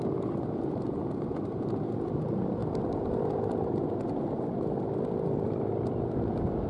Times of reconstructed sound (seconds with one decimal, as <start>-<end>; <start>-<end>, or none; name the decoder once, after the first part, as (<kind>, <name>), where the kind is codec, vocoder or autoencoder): none